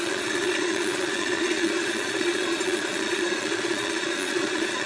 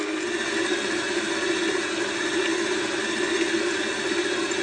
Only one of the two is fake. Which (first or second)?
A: first